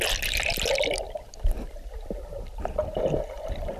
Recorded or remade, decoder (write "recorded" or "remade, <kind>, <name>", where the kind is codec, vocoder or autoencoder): recorded